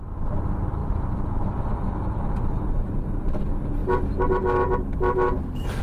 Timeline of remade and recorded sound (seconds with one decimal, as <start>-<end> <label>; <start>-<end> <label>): 0.0-5.8 recorded